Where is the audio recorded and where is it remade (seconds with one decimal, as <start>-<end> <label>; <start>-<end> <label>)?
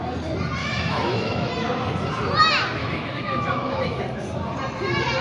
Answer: 0.0-0.6 recorded; 0.6-1.5 remade; 1.5-2.8 recorded; 2.8-4.0 remade; 4.0-5.2 recorded